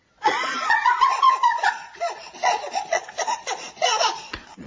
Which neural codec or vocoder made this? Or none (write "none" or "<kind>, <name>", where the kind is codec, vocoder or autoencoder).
vocoder, Vocos